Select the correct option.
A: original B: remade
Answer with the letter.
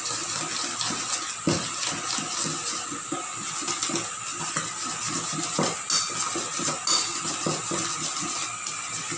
A